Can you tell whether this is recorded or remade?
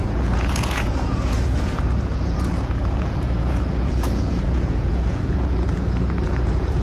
remade